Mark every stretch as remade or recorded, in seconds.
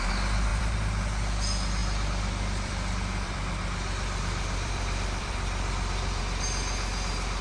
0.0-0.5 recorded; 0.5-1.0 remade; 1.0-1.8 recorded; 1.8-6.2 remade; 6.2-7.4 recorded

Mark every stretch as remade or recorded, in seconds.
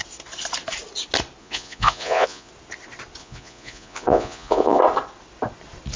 0.0-1.4 recorded; 1.4-2.5 remade; 2.5-3.2 recorded; 3.2-4.8 remade; 4.8-6.0 recorded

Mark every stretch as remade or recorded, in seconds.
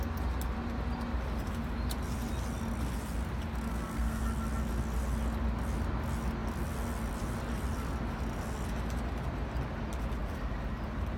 0.0-3.7 recorded; 3.7-4.2 remade; 4.2-11.2 recorded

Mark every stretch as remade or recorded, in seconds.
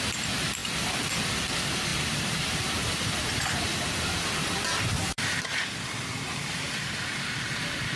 0.0-1.9 recorded; 1.9-2.8 remade; 2.8-4.7 recorded; 4.7-5.6 remade; 5.6-8.0 recorded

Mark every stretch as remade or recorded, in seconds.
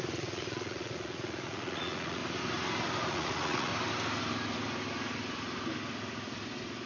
0.0-2.2 remade; 2.2-3.1 recorded; 3.1-3.7 remade; 3.7-6.9 recorded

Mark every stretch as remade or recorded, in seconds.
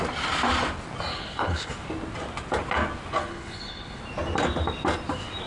0.0-1.1 recorded; 1.1-1.7 remade; 1.7-3.2 recorded; 3.2-4.0 remade; 4.0-5.5 recorded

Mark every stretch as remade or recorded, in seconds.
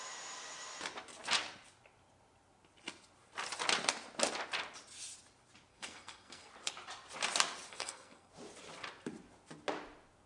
0.0-5.7 recorded; 5.7-6.5 remade; 6.5-7.7 recorded; 7.7-8.3 remade; 8.3-10.3 recorded